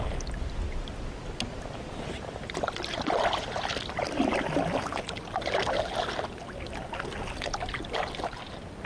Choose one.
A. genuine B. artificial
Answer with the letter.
A